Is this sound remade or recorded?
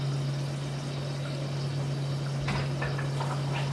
recorded